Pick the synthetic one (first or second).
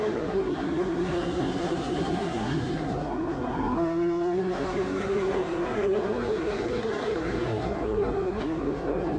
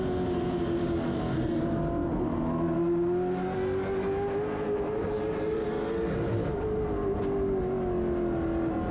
first